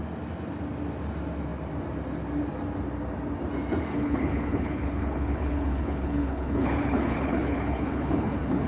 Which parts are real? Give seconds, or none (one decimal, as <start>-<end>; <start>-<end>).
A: 0.0-3.9